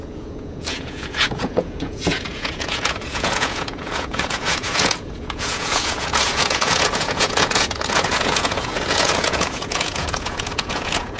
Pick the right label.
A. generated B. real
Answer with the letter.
A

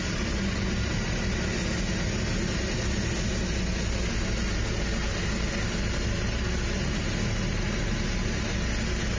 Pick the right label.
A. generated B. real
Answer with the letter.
B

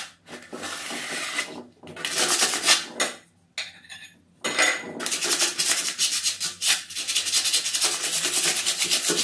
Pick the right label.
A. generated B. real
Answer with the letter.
B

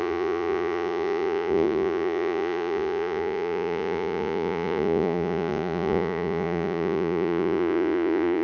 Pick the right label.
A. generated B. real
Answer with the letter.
A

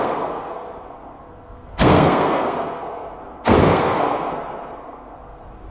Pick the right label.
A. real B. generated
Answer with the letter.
B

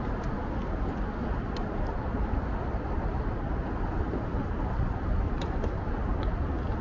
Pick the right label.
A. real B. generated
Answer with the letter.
A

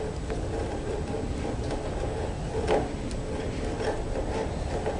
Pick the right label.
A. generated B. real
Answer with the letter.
B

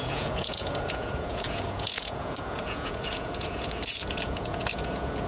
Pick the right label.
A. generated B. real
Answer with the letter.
A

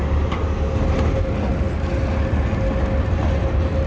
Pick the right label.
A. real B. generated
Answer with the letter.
A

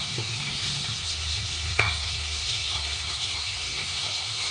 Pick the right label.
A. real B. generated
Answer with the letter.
B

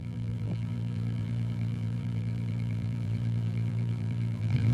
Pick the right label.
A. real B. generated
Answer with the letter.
B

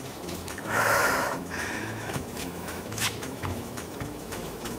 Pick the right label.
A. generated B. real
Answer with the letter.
A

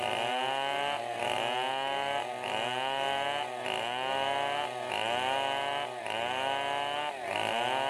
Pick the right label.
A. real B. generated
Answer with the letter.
A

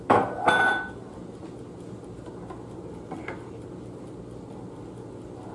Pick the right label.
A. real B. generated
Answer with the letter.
A